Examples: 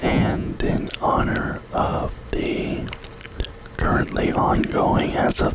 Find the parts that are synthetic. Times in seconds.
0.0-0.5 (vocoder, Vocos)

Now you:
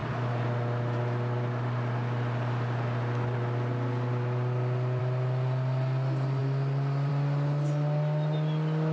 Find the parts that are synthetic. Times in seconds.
none

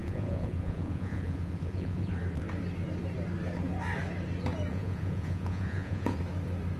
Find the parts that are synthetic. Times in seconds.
0.0-2.1 (vocoder, Vocos); 4.7-6.2

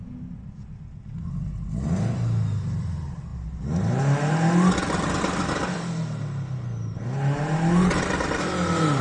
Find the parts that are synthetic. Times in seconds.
none

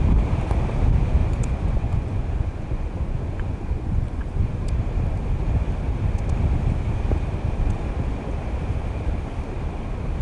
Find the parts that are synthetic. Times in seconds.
1.2-4.6 (vocoder, Vocos)